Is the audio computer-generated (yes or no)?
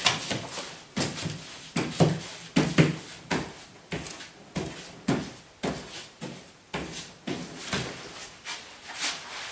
no